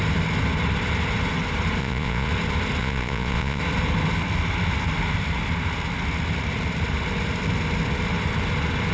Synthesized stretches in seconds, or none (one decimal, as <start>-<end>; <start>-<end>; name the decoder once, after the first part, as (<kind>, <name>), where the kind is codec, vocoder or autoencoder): 1.8-2.3 (vocoder, Vocos); 2.8-3.6